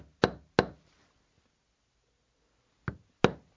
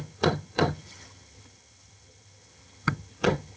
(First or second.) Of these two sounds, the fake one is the second